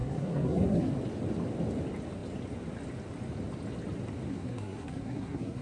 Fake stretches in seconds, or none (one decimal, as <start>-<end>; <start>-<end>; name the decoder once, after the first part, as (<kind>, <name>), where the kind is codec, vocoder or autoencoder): 0.0-0.9 (codec, SNAC); 4.3-5.6